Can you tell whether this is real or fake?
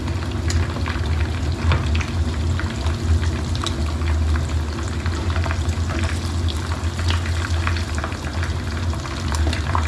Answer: real